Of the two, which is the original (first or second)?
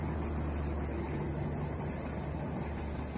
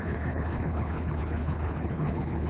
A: first